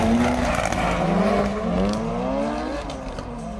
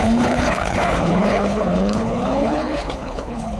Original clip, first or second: first